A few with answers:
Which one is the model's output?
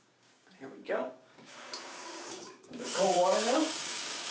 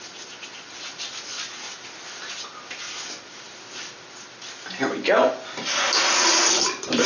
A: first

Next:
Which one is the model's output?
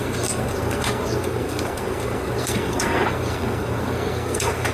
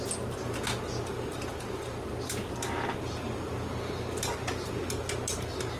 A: first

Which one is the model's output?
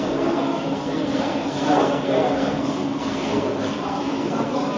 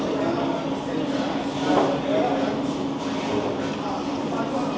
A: first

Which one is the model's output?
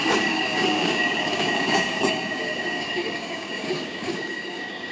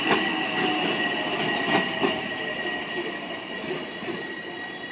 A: first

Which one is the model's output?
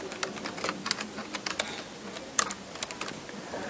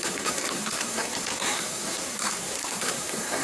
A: second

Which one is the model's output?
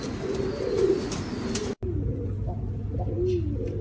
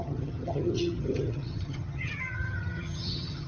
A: second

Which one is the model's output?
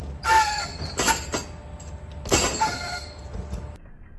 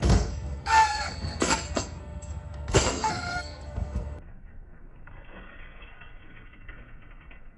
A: second